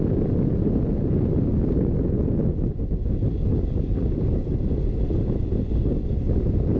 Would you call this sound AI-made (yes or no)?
no